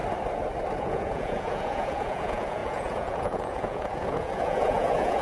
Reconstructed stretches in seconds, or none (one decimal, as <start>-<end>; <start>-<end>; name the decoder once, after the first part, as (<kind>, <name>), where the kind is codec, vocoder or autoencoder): 0.8-5.2 (vocoder, Vocos)